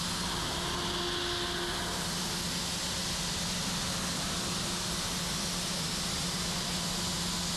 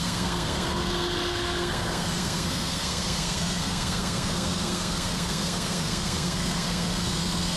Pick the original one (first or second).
first